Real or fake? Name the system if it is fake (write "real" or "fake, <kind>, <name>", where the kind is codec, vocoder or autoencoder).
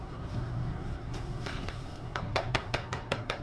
fake, codec, SNAC